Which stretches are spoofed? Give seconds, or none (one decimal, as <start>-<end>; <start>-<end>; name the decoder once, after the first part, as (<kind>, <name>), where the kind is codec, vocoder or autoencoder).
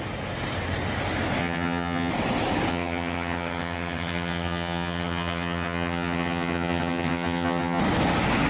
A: 1.4-2.1 (vocoder, HiFi-GAN); 2.7-7.8